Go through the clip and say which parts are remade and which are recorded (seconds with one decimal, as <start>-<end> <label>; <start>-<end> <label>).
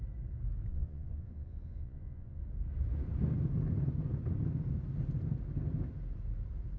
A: 0.0-0.7 recorded; 0.7-2.4 remade; 2.4-6.8 recorded